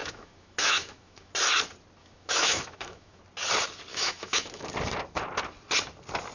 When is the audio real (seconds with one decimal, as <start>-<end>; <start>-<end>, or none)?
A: 1.3-2.0; 3.2-3.9; 4.7-6.3